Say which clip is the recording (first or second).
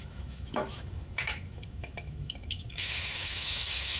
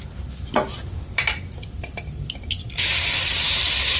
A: second